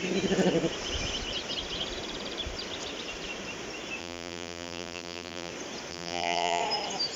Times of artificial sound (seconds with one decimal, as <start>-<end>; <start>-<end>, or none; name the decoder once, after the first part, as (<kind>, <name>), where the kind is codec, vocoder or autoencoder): 4.0-5.5 (vocoder, BigVGAN v2); 5.9-6.6